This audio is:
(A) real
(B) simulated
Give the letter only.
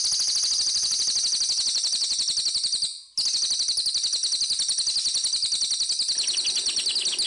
A